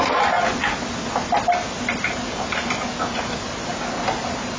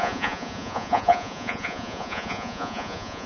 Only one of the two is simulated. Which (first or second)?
second